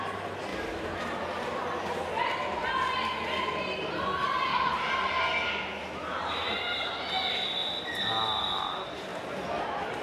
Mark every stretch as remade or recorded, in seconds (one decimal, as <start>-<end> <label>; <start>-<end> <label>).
0.0-0.5 recorded; 0.5-1.6 remade; 1.6-10.0 recorded